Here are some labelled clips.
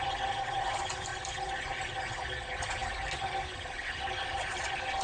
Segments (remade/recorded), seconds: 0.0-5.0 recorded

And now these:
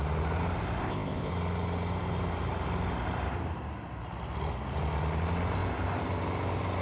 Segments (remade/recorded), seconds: 0.0-0.8 recorded; 0.8-1.3 remade; 1.3-6.8 recorded

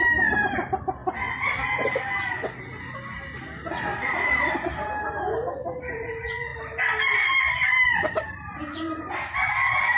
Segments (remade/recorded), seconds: 0.0-3.9 recorded; 3.9-5.1 remade; 5.1-6.5 recorded; 6.5-9.0 remade; 9.0-10.0 recorded